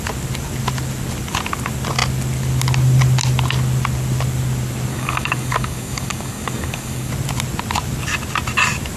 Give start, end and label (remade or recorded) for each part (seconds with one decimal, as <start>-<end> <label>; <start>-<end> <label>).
0.0-4.9 recorded; 4.9-7.1 remade; 7.1-9.0 recorded